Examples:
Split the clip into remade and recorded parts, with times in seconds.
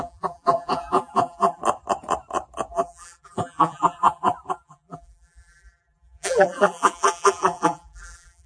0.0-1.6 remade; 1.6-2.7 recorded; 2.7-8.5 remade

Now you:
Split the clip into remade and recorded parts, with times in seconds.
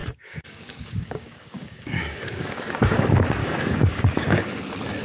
0.0-3.0 remade; 3.0-3.4 recorded; 3.4-4.6 remade; 4.6-5.0 recorded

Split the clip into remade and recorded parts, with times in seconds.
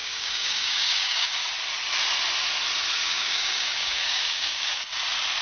0.0-1.3 remade; 1.3-3.0 recorded; 3.0-4.7 remade; 4.7-5.4 recorded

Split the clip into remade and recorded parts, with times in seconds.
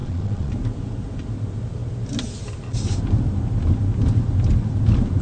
0.0-0.5 remade; 0.5-5.2 recorded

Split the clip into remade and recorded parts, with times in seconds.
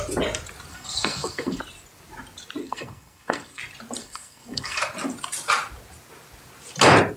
0.0-0.7 recorded; 0.7-1.6 remade; 1.6-2.6 recorded; 2.6-3.6 remade; 3.6-4.0 recorded; 4.0-4.8 remade; 4.8-7.2 recorded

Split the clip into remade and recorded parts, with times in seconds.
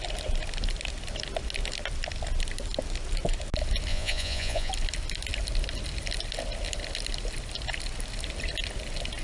0.0-3.9 recorded; 3.9-4.7 remade; 4.7-9.2 recorded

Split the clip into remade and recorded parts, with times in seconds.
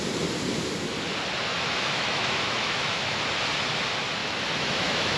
0.0-1.5 recorded; 1.5-3.2 remade; 3.2-4.2 recorded; 4.2-5.2 remade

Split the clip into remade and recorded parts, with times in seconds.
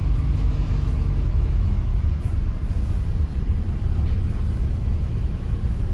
0.0-1.9 remade; 1.9-5.0 recorded; 5.0-5.9 remade